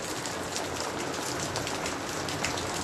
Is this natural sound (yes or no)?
yes